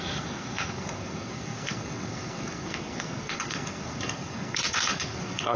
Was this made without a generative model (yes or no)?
no